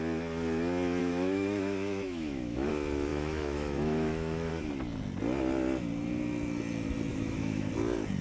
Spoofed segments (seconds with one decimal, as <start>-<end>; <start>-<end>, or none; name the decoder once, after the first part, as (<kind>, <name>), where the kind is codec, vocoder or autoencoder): 1.0-2.7 (autoencoder, DAC-VAE); 3.1-4.5; 7.1-7.7